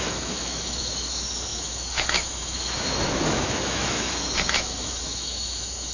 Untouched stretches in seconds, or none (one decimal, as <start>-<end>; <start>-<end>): none